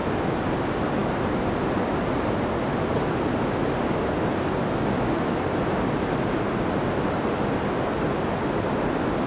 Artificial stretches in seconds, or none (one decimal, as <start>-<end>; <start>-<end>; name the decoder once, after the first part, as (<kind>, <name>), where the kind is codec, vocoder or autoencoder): none